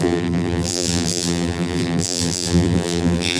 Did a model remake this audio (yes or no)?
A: yes